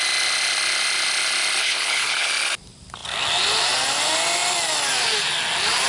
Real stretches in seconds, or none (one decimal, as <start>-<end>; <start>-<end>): 0.0-1.6; 2.3-5.9